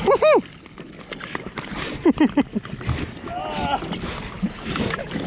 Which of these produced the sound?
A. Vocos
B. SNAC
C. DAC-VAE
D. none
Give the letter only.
D